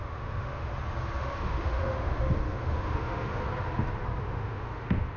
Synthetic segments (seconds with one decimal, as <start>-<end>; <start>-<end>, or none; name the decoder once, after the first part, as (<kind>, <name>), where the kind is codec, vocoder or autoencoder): 0.0-0.7 (autoencoder, DAC-VAE); 1.2-3.4; 4.2-5.2